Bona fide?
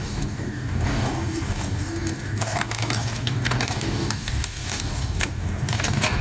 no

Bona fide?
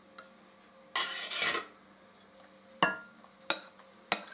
yes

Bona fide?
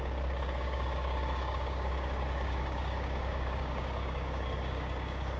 no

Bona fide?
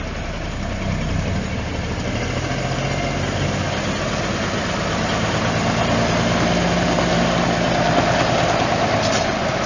yes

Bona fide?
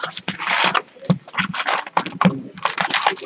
yes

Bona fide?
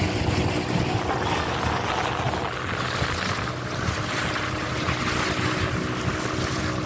yes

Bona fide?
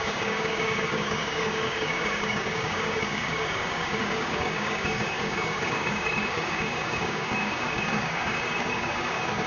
no